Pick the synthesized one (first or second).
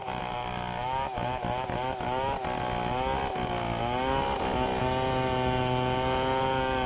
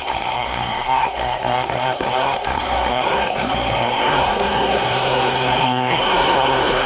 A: second